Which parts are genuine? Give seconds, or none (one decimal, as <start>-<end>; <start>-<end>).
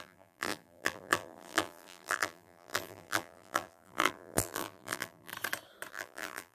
5.3-5.9